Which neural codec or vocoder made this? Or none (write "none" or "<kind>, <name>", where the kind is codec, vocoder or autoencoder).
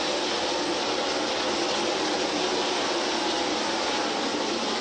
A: none